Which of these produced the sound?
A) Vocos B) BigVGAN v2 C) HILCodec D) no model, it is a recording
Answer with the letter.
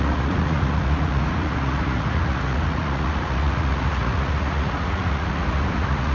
A